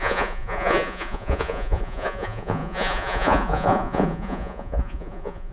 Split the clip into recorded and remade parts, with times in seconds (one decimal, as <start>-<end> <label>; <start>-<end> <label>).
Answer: 0.0-5.5 remade